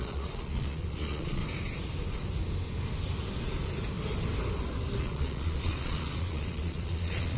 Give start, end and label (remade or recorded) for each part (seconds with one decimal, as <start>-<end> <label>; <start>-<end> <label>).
0.0-1.4 remade; 1.4-5.0 recorded; 5.0-7.4 remade